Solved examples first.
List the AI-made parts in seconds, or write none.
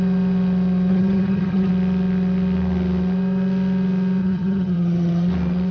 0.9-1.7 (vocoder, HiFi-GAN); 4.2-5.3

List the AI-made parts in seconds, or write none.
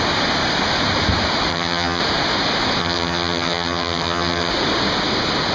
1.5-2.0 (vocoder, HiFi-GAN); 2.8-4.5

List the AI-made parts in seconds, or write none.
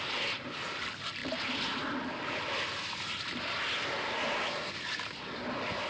none